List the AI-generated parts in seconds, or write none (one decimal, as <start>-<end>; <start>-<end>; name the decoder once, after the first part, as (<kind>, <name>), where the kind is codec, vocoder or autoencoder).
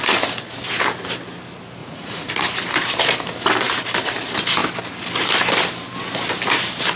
1.8-2.3 (vocoder, Vocos)